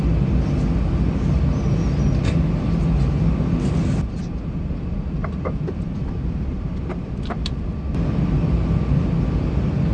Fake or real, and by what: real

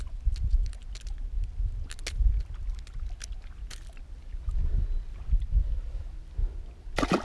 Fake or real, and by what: real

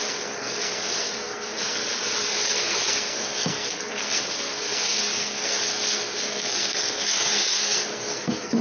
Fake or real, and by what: fake, codec, SNAC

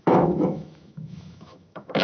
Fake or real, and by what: fake, autoencoder, DAC-VAE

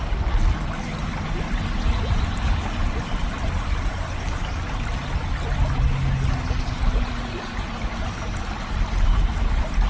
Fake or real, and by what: real